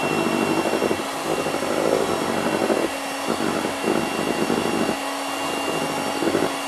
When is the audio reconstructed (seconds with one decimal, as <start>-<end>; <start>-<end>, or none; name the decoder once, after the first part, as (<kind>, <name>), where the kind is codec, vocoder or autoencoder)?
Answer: none